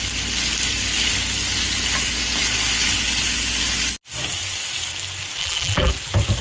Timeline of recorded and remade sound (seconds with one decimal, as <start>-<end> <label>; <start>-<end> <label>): 0.0-5.4 recorded; 5.4-5.9 remade; 5.9-6.4 recorded